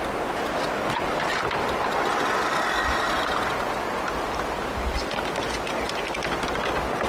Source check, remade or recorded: recorded